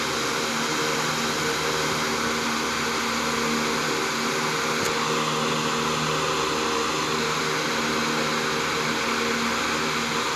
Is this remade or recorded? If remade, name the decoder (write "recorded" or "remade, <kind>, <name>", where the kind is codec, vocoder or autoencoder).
recorded